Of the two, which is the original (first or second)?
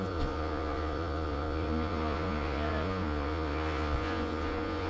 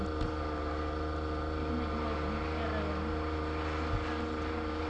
second